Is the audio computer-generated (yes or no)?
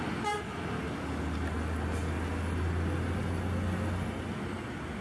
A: no